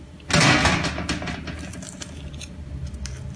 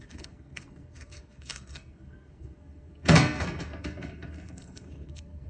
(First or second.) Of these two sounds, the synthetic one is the second